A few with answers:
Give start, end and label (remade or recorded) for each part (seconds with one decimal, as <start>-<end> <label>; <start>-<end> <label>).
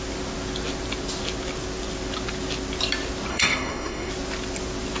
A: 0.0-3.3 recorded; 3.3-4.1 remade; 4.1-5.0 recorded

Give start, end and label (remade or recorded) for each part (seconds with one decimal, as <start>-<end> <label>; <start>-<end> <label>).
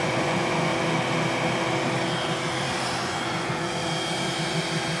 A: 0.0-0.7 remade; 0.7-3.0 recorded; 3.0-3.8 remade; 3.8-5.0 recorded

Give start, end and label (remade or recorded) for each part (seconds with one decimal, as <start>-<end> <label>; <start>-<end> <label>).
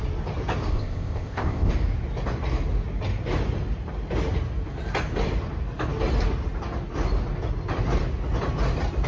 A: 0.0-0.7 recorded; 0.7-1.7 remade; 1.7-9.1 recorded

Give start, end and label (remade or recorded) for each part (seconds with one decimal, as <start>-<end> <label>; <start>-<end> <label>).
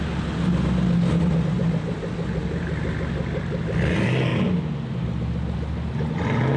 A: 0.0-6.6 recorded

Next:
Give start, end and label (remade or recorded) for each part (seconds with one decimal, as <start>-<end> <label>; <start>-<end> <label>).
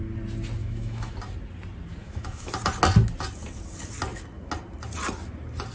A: 0.0-0.6 recorded; 0.6-1.1 remade; 1.1-2.0 recorded; 2.0-2.5 remade; 2.5-5.7 recorded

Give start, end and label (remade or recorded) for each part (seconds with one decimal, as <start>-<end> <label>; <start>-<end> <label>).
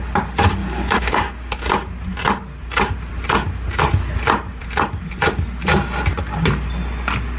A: 0.0-0.6 recorded; 0.6-1.6 remade; 1.6-7.4 recorded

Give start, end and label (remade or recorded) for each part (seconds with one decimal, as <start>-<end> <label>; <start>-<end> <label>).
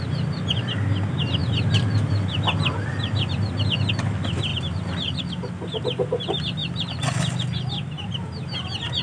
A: 0.0-9.0 recorded